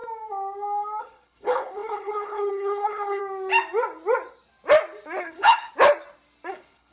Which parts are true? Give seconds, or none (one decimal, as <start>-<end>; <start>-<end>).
0.0-1.0; 3.2-5.2; 5.7-6.5